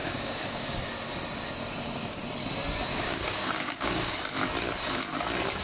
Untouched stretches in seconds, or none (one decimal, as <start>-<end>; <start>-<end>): 0.8-2.9; 4.2-5.6